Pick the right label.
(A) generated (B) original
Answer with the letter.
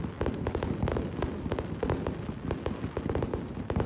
B